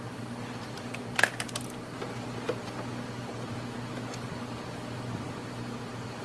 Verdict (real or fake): real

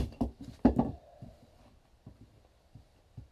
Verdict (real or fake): real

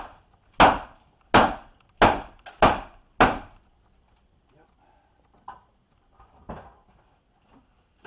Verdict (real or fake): real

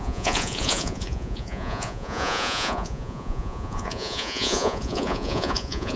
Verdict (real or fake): fake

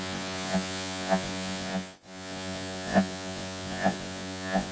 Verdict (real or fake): fake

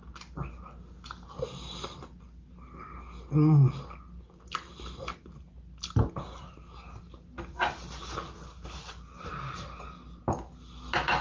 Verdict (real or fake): real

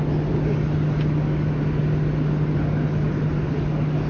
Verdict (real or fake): real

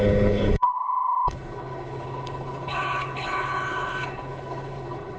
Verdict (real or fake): fake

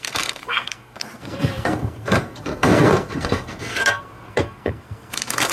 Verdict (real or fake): fake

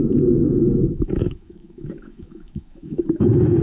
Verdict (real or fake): fake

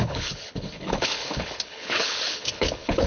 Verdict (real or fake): fake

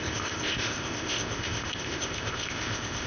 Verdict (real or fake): fake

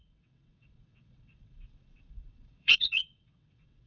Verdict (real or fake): fake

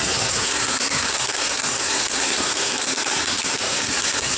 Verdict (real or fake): fake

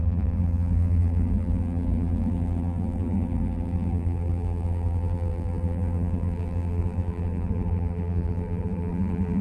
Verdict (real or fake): fake